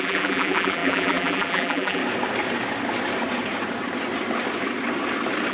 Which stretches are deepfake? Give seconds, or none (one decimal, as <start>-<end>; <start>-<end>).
0.0-2.0